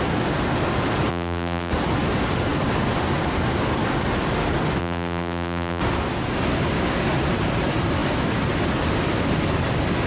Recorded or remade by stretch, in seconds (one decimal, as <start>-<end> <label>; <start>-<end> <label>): 0.0-1.1 recorded; 1.1-1.7 remade; 1.7-4.8 recorded; 4.8-5.8 remade; 5.8-10.1 recorded